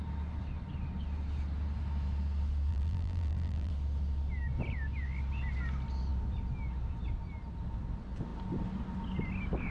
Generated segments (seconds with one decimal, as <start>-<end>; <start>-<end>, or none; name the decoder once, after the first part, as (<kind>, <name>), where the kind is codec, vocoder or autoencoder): 2.7-3.7 (vocoder, BigVGAN v2)